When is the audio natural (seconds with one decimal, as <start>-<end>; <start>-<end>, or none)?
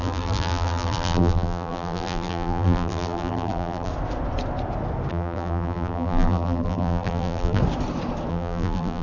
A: 3.9-5.1; 7.6-8.3